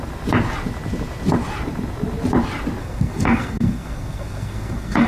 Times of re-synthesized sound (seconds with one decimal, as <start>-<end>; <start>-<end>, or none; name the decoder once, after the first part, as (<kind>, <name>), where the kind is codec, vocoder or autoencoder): 2.8-5.1 (codec, SNAC)